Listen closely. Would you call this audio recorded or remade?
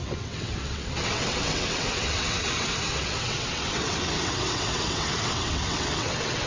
remade